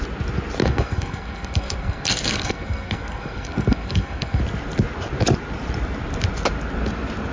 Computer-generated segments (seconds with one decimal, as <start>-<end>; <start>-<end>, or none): 0.6-4.4